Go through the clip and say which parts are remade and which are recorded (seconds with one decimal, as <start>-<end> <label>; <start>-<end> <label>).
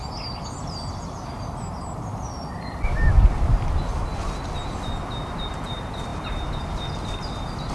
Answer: 0.0-7.7 recorded